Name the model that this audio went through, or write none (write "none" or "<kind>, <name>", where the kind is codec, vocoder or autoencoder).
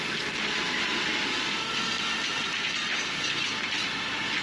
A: none